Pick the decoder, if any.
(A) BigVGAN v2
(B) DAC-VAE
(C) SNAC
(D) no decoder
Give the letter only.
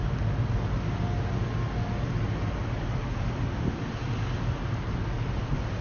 D